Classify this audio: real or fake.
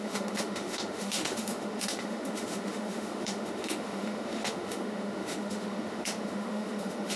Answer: fake